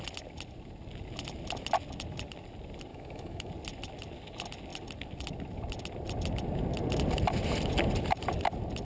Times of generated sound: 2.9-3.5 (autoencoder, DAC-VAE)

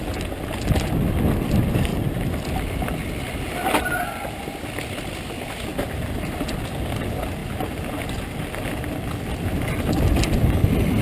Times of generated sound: 1.9-2.9 (vocoder, BigVGAN v2); 5.7-7.0